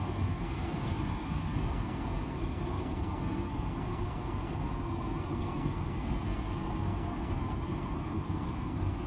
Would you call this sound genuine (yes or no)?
no